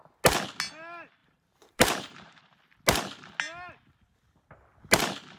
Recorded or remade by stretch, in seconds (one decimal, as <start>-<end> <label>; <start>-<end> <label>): 0.0-1.2 recorded; 1.2-2.4 remade; 2.4-5.4 recorded